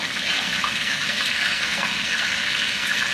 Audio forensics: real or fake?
fake